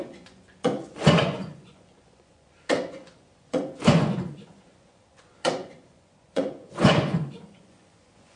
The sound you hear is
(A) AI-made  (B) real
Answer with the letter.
A